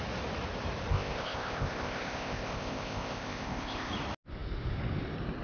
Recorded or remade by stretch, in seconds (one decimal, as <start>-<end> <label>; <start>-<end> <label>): 0.0-0.9 recorded; 0.9-3.9 remade; 3.9-5.4 recorded